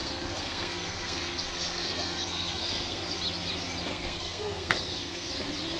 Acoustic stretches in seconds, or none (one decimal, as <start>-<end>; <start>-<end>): 3.0-3.9; 5.3-5.8